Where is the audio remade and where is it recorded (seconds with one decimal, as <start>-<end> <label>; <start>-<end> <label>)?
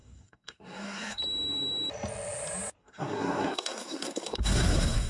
0.0-1.2 remade; 1.2-2.8 recorded; 2.8-5.1 remade